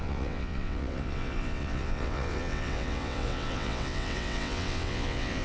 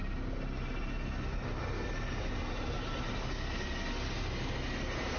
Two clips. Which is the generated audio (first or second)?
first